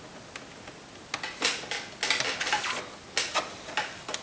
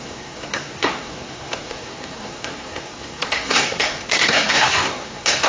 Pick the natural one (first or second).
first